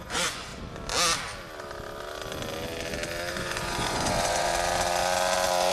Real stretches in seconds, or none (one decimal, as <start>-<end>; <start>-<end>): 0.5-3.3; 4.5-5.7